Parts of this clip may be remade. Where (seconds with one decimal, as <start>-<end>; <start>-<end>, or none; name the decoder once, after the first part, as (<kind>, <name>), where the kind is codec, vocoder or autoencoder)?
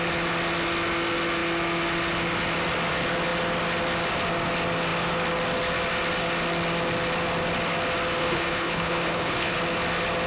8.2-9.6 (codec, HILCodec)